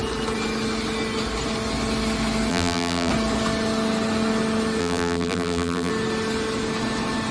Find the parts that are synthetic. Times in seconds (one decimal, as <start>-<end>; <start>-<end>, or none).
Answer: 2.5-3.1; 4.8-5.9